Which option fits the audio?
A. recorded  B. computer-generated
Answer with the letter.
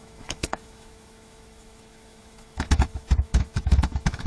B